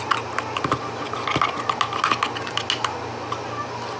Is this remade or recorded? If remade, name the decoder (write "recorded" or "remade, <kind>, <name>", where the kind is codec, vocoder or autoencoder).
recorded